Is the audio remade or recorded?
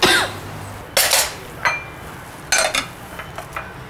recorded